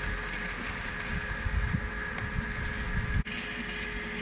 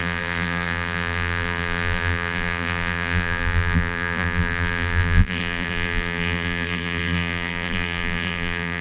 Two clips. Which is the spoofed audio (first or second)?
second